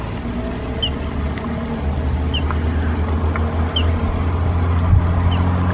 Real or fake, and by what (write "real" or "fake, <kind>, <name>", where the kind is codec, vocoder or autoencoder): real